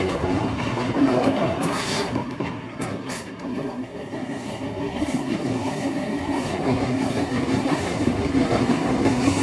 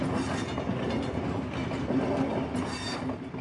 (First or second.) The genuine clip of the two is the second